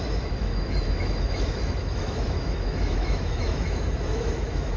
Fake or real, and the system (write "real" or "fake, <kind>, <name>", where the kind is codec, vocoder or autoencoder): fake, autoencoder, DAC-VAE